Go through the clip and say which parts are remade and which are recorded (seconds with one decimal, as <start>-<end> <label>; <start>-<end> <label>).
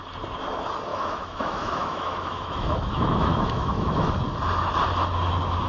0.0-0.9 recorded; 0.9-4.1 remade; 4.1-5.7 recorded